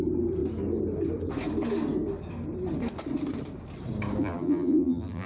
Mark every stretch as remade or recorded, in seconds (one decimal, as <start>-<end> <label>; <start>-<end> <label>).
0.0-4.2 recorded; 4.2-5.3 remade